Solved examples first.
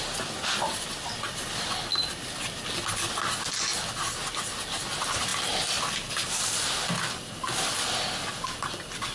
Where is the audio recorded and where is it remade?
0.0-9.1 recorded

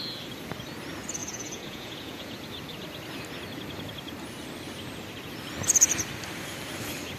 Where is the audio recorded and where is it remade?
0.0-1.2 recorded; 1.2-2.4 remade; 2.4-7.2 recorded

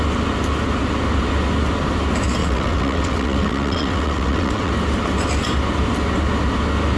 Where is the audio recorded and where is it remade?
0.0-2.4 recorded; 2.4-4.7 remade; 4.7-7.0 recorded

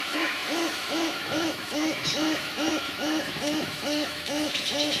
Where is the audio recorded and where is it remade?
0.0-5.0 remade

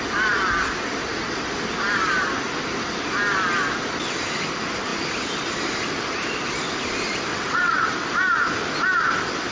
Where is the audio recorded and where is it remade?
0.0-7.3 recorded; 7.3-7.9 remade; 7.9-9.5 recorded

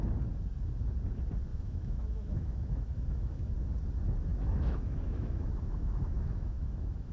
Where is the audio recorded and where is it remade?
0.0-1.5 recorded; 1.5-3.5 remade; 3.5-4.3 recorded; 4.3-7.1 remade

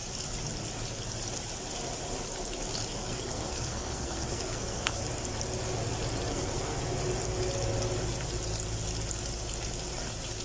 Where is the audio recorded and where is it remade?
0.0-3.0 recorded; 3.0-5.0 remade; 5.0-6.3 recorded; 6.3-6.8 remade; 6.8-10.4 recorded

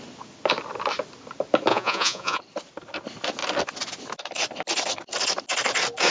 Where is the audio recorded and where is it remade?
0.0-1.7 recorded; 1.7-2.4 remade; 2.4-6.1 recorded